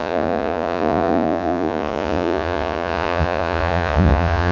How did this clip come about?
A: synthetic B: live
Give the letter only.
A